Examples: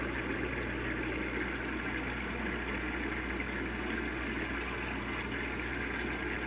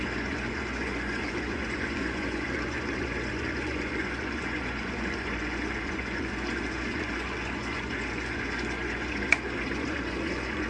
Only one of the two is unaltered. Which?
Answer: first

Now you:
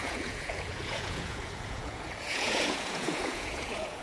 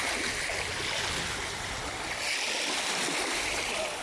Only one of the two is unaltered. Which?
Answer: second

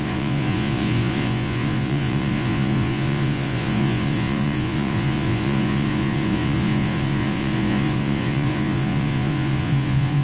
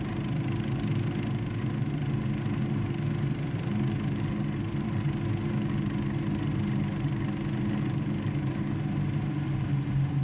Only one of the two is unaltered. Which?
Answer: second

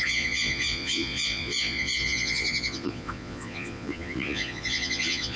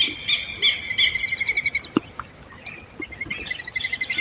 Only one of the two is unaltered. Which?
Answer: second